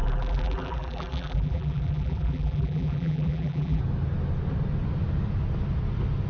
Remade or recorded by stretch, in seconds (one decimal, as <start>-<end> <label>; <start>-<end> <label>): 0.0-3.8 remade; 3.8-6.3 recorded

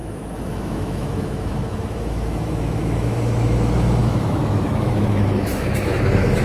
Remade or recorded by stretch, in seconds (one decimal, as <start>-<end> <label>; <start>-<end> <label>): 0.0-6.4 remade